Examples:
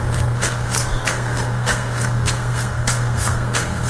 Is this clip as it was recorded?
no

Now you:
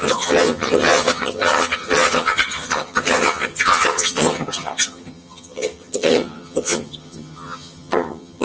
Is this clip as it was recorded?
no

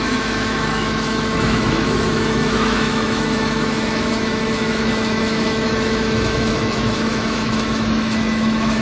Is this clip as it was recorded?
no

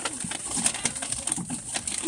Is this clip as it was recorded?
yes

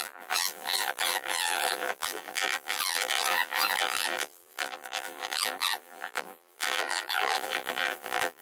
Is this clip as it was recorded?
no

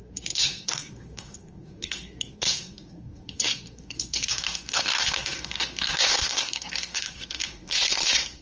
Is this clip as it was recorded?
no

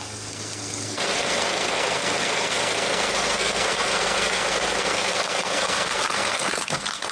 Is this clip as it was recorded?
no